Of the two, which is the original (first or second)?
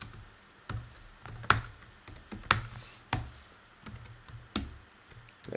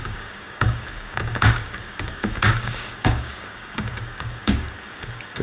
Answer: first